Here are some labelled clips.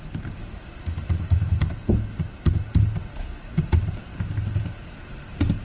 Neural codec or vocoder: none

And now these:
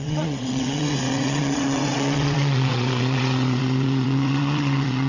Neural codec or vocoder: vocoder, WaveNeXt